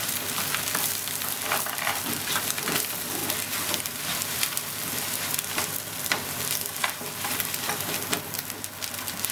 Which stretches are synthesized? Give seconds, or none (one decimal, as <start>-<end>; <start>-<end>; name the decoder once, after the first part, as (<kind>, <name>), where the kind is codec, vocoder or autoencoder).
0.0-3.2 (vocoder, BigVGAN v2); 3.8-6.7; 8.2-9.3